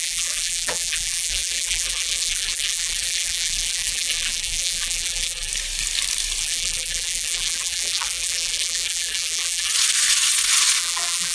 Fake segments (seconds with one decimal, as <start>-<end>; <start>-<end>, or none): 0.0-5.5; 6.4-9.7; 10.8-11.3